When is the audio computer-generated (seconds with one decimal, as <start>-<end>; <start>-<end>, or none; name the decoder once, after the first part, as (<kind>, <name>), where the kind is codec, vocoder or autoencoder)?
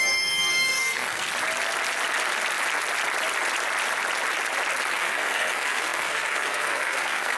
0.0-1.3 (codec, SNAC); 4.9-7.4